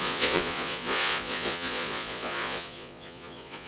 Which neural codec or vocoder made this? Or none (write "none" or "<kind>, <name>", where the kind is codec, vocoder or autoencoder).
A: vocoder, Vocos